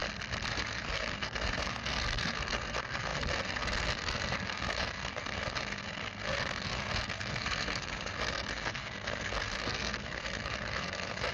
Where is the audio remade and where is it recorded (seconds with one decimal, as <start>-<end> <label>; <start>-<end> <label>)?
0.0-0.5 recorded; 0.5-11.3 remade